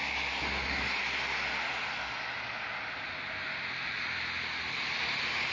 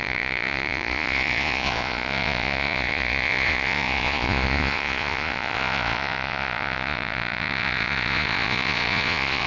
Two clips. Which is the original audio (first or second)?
first